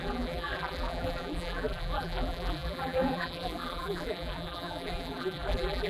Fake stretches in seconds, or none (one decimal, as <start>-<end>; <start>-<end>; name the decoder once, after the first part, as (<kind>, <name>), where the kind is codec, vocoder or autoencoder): 0.0-5.9 (vocoder, BigVGAN v2)